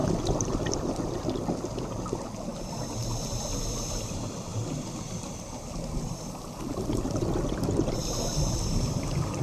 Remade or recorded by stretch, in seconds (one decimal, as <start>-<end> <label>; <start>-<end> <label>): 0.0-9.4 recorded